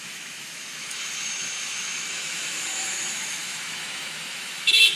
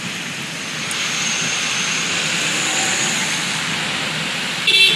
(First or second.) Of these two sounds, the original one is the second